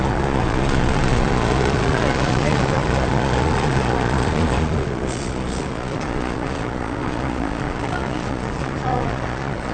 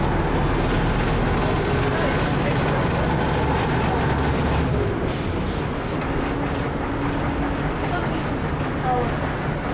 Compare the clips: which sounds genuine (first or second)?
second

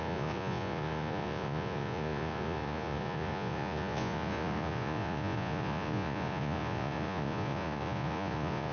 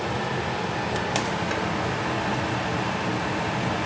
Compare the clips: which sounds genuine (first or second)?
second